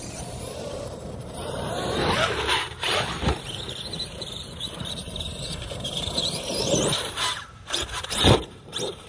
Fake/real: fake